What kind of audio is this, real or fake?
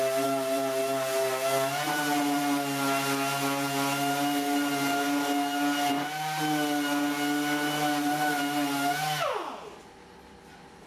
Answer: real